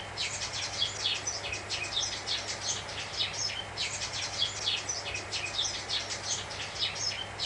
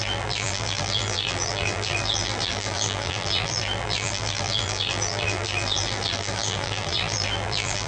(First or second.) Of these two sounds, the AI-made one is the second